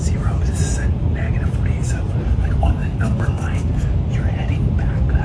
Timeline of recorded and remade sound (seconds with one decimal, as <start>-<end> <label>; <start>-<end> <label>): 0.0-2.8 recorded; 2.8-4.1 remade; 4.1-5.2 recorded